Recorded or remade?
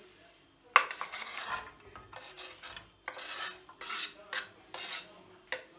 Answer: recorded